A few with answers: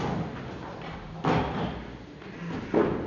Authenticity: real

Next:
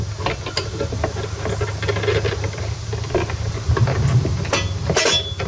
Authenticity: real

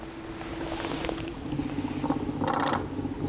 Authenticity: real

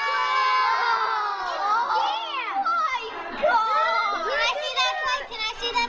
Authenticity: real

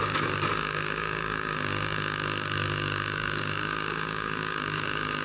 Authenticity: fake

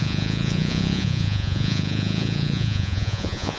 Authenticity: fake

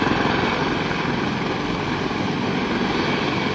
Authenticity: real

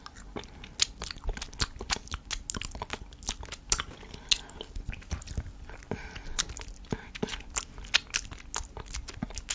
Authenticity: real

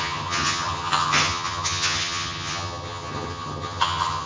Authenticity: fake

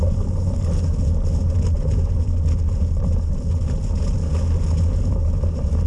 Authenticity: real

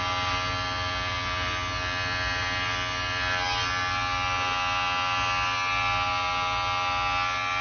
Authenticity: real